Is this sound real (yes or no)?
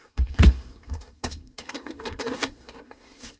no